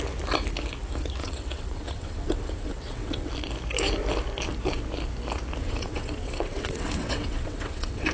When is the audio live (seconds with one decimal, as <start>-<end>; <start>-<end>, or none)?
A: 0.0-1.2; 3.3-5.6